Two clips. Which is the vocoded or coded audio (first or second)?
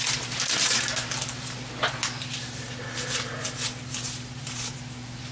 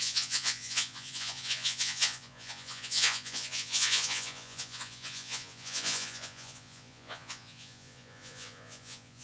second